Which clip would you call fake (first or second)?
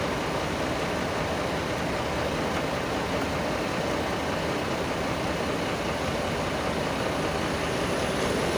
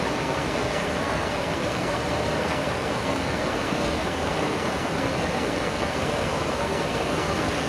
second